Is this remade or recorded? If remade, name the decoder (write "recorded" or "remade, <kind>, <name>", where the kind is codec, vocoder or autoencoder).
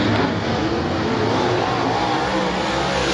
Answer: recorded